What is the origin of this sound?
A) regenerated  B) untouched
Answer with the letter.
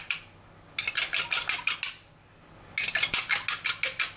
B